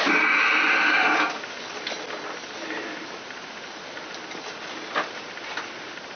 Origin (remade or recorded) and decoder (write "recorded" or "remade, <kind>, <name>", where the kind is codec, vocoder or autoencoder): recorded